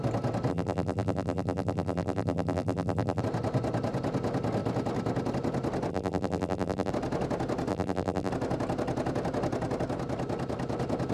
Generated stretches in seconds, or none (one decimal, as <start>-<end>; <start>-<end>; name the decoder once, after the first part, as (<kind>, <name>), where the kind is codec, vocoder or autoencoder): 0.5-3.2 (vocoder, BigVGAN v2); 5.9-6.9; 7.7-8.3